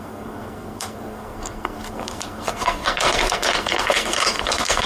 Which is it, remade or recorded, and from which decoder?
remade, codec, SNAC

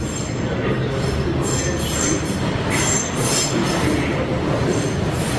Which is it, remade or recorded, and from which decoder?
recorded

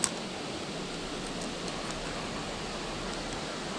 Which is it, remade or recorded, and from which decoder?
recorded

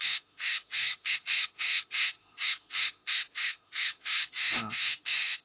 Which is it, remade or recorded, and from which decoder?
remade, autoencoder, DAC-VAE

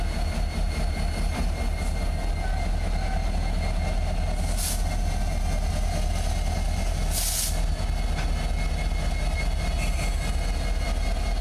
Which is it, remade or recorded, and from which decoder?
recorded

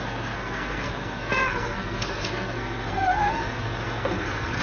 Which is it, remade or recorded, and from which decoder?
remade, codec, SNAC